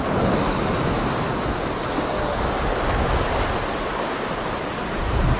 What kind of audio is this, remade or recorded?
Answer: recorded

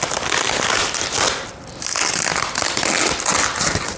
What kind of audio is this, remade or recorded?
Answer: remade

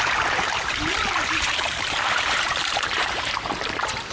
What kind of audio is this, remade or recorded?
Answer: remade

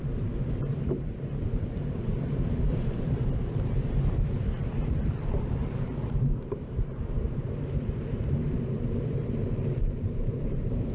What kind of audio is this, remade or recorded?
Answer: remade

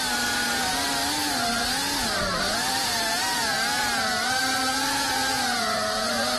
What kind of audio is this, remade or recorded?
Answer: recorded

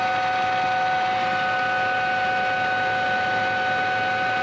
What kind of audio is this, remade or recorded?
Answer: recorded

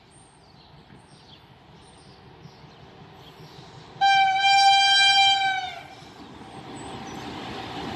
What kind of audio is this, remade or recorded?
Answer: recorded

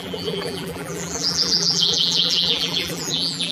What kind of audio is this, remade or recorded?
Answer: remade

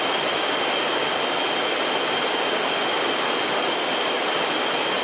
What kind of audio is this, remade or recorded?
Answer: recorded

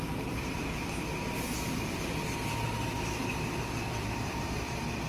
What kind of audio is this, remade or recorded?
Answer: remade